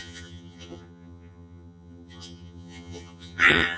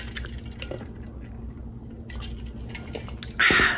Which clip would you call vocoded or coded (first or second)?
first